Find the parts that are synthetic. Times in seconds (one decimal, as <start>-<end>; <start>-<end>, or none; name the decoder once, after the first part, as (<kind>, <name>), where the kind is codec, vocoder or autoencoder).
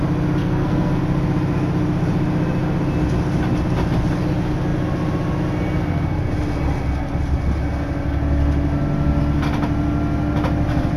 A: 0.4-1.0 (codec, SNAC)